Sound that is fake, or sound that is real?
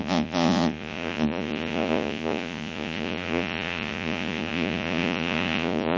fake